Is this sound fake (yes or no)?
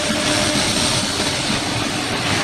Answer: no